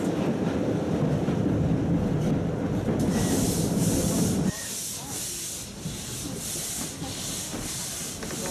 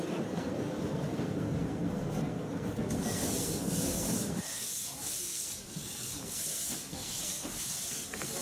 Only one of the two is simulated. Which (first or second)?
second